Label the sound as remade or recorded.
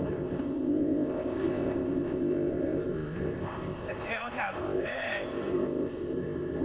remade